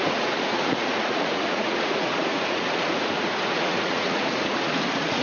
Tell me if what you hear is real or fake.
fake